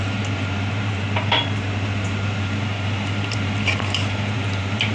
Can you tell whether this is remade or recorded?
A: remade